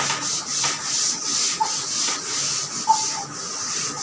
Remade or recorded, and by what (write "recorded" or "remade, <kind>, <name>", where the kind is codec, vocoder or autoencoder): recorded